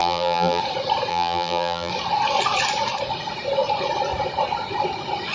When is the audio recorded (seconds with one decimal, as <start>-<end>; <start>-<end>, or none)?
0.6-1.1; 1.9-5.3